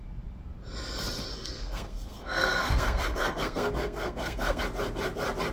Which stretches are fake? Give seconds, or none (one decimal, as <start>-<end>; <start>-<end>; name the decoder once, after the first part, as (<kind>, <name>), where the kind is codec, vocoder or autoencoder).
1.3-4.6 (codec, SNAC)